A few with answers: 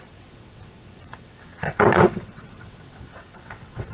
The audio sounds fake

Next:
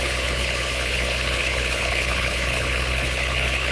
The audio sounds fake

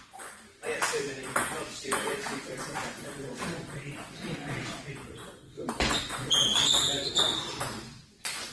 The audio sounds fake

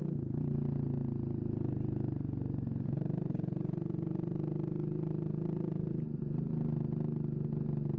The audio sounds real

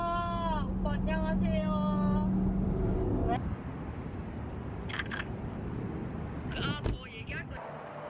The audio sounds real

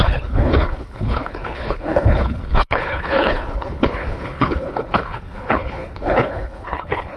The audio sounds fake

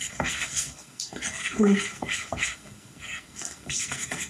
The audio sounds fake